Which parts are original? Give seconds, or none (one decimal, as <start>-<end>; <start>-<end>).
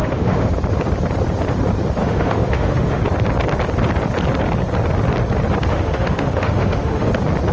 0.5-2.0; 3.0-5.7; 7.1-7.5